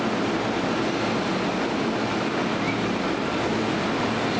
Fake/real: real